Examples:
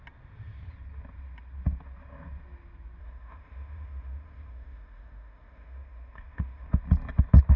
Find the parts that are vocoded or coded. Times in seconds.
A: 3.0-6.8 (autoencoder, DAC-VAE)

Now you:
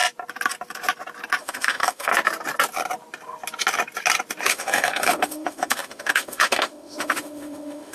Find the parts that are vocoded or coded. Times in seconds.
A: 1.4-2.1 (autoencoder, DAC-VAE); 4.5-7.9